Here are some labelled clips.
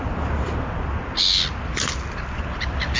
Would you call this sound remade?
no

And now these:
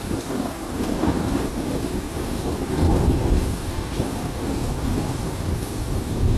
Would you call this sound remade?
yes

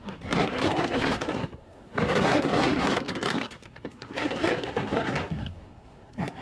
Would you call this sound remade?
yes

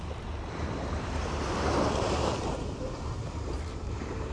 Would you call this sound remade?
yes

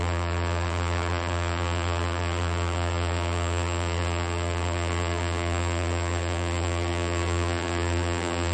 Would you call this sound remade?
yes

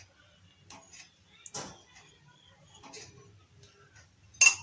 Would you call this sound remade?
no